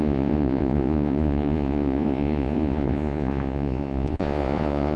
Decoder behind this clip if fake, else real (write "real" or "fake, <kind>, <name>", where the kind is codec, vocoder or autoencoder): fake, vocoder, Vocos